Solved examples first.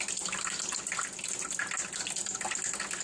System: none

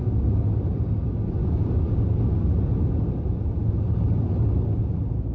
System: none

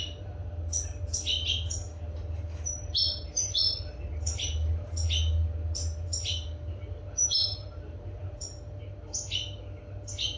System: none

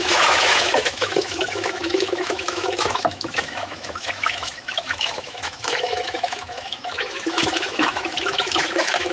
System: autoencoder, DAC-VAE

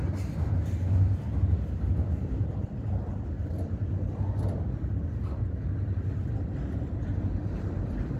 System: none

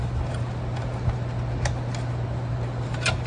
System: none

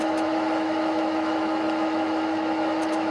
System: autoencoder, DAC-VAE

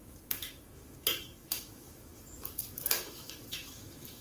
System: autoencoder, DAC-VAE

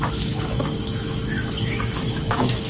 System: autoencoder, DAC-VAE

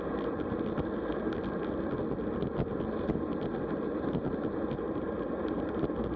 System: none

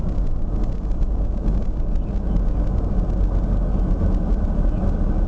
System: none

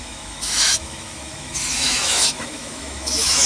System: autoencoder, DAC-VAE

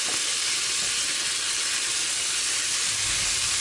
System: none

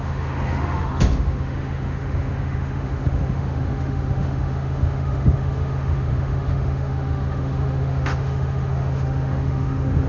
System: autoencoder, DAC-VAE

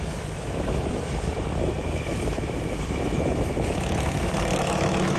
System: autoencoder, DAC-VAE